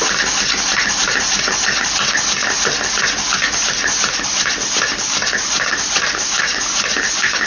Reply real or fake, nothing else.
real